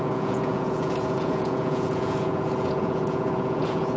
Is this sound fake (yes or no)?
yes